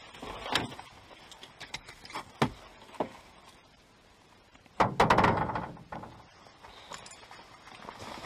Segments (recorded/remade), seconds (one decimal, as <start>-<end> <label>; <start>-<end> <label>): 0.0-3.6 recorded; 3.6-4.9 remade; 4.9-8.3 recorded